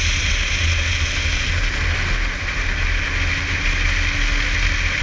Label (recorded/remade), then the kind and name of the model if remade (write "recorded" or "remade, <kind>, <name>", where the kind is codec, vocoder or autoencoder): recorded